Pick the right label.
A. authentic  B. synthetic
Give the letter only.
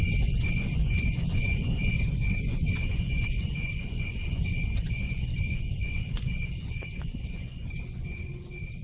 B